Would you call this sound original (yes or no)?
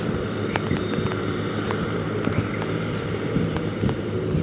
no